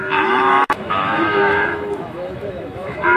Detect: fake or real fake